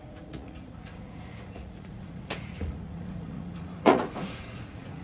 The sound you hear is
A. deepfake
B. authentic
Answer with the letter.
A